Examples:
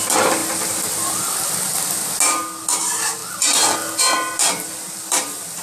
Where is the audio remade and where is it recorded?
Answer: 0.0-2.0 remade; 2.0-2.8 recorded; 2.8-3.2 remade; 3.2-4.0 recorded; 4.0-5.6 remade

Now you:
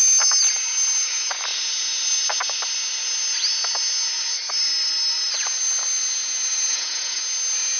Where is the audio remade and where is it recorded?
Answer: 0.0-6.7 recorded; 6.7-7.2 remade; 7.2-7.8 recorded

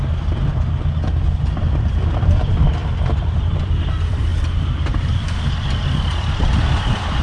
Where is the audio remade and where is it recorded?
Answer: 0.0-0.5 remade; 0.5-1.3 recorded; 1.3-4.3 remade; 4.3-5.8 recorded; 5.8-7.2 remade

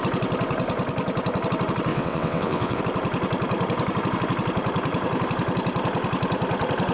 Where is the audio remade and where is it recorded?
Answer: 0.0-1.9 recorded; 1.9-2.8 remade; 2.8-6.9 recorded

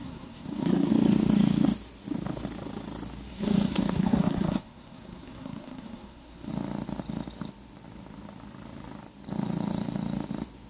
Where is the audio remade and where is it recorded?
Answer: 0.0-0.9 remade; 0.9-3.3 recorded; 3.3-6.5 remade; 6.5-10.7 recorded

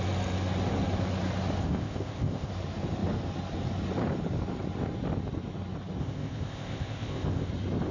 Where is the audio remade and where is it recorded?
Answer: 0.0-1.6 recorded; 1.6-2.5 remade; 2.5-6.0 recorded; 6.0-7.5 remade; 7.5-7.9 recorded

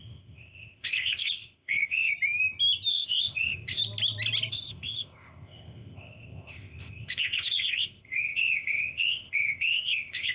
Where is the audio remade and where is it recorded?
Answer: 0.0-2.1 remade; 2.1-2.9 recorded; 2.9-3.8 remade; 3.8-4.5 recorded; 4.5-10.3 remade

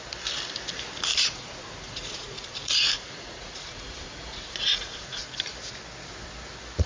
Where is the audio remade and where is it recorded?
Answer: 0.0-1.1 recorded; 1.1-5.2 remade; 5.2-6.9 recorded